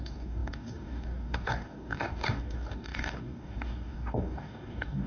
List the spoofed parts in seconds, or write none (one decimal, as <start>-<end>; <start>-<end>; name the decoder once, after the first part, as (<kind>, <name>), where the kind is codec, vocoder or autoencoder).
0.0-5.1 (codec, DAC)